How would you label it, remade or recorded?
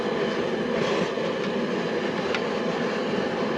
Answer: recorded